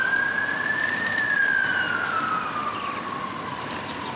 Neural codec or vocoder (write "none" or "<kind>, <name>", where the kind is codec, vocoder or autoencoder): vocoder, BigVGAN v2